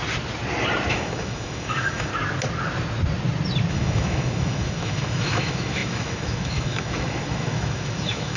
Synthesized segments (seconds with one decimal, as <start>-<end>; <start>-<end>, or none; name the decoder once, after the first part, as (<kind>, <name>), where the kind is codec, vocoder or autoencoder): 0.9-2.1 (autoencoder, DAC-VAE); 3.7-8.4